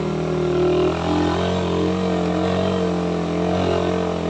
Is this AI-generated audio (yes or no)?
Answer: no